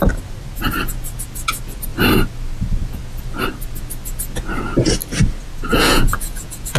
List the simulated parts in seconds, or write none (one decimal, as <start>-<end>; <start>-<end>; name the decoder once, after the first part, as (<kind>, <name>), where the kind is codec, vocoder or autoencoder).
5.7-6.8 (vocoder, Vocos)